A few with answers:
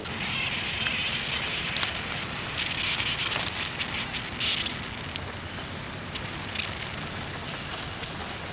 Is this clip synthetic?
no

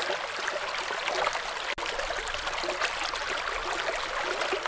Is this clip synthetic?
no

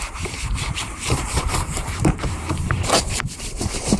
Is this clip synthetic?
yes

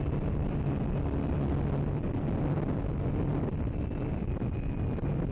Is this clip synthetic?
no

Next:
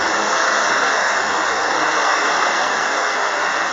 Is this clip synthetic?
yes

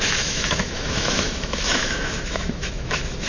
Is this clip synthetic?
yes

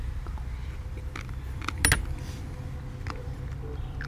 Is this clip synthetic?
no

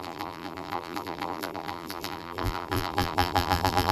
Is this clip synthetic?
yes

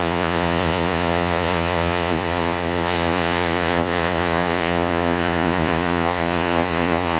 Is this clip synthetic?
yes